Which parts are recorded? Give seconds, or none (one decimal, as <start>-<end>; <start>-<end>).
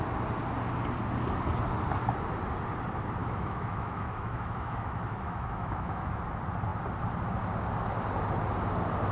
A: 0.0-3.2; 6.2-9.1